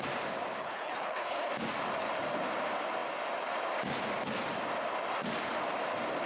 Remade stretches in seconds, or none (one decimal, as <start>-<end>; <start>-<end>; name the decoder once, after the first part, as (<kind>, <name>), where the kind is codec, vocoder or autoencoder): 0.6-1.5 (codec, HILCodec)